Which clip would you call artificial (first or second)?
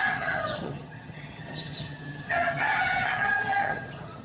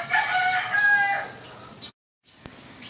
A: first